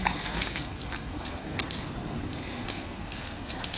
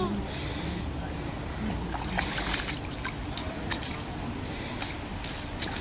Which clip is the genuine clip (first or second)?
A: second